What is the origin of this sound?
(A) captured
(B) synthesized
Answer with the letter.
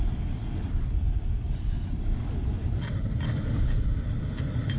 A